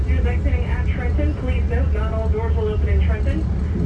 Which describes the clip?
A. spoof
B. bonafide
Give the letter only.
B